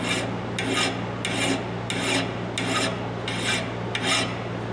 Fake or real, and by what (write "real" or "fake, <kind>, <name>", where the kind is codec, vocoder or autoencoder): real